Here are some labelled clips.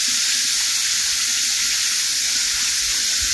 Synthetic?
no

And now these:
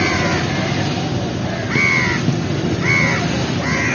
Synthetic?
no